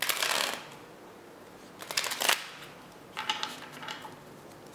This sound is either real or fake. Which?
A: real